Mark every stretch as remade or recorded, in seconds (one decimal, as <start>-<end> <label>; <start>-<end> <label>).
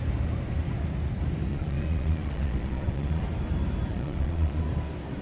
0.0-1.5 recorded; 1.5-3.2 remade; 3.2-3.9 recorded; 3.9-4.7 remade; 4.7-5.2 recorded